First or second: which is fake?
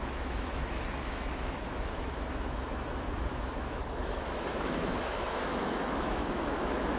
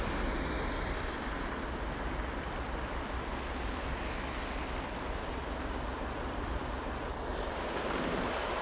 first